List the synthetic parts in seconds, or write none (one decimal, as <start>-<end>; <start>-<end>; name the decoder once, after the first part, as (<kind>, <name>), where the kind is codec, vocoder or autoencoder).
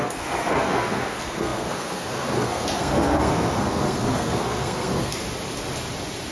0.0-5.2 (codec, SNAC)